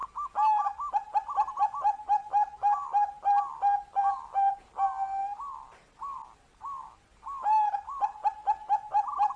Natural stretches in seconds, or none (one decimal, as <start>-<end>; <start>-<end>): 0.0-9.4